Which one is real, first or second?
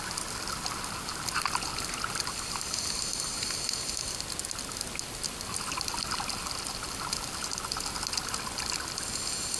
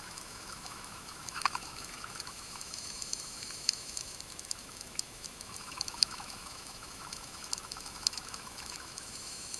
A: first